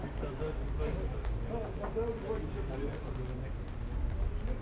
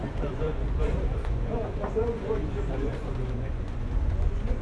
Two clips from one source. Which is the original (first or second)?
first